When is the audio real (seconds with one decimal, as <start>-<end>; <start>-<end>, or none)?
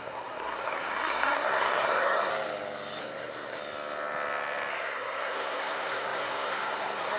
2.3-3.0; 3.6-4.7